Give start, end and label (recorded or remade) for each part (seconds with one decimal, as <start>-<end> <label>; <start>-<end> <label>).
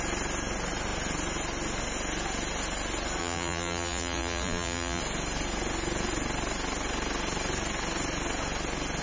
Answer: 0.0-3.2 recorded; 3.2-5.0 remade; 5.0-9.0 recorded